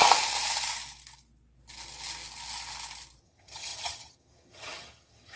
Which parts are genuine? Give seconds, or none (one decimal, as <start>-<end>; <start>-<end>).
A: 0.0-3.2